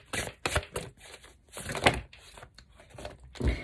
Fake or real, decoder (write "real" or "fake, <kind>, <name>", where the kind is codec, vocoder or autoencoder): real